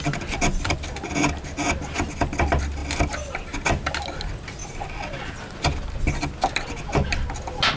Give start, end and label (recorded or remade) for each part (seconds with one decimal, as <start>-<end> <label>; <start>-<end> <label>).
0.0-7.8 recorded